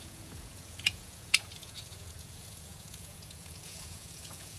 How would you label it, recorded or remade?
remade